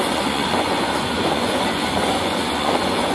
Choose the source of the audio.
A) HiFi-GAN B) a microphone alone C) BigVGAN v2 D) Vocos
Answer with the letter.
D